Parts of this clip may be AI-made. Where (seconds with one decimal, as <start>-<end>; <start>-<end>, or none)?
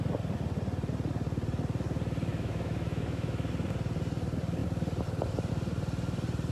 2.3-3.5